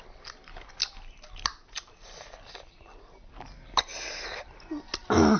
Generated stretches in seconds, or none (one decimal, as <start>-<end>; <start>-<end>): none